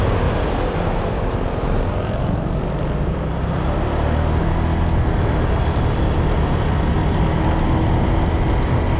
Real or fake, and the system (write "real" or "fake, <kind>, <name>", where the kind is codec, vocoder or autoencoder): real